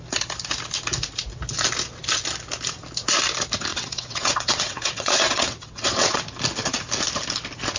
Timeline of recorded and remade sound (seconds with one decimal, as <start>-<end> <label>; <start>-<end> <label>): 0.0-3.7 recorded; 3.7-6.2 remade; 6.2-7.8 recorded